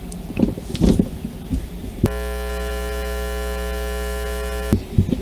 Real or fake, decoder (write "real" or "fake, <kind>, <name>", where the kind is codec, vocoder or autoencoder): real